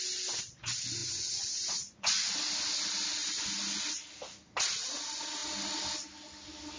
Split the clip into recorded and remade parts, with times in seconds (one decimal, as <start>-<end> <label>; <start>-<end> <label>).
0.0-1.0 recorded; 1.0-2.3 remade; 2.3-6.8 recorded